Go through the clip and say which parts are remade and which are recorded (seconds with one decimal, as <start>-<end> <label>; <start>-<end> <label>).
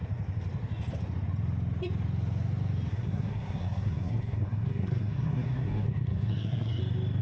0.0-2.9 recorded; 2.9-6.8 remade; 6.8-7.2 recorded